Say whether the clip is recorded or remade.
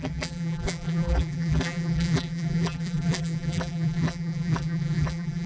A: remade